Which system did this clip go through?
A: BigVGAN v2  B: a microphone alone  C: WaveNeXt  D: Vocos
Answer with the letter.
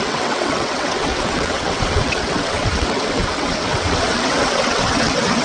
C